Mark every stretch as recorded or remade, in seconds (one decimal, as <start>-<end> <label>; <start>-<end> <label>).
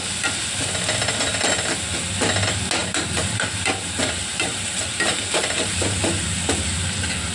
0.0-2.8 recorded; 2.8-6.0 remade; 6.0-7.3 recorded